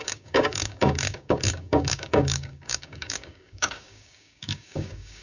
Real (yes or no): no